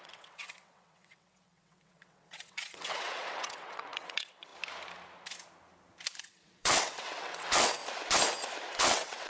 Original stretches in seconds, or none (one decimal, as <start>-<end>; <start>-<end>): 4.5-6.2; 7.8-8.7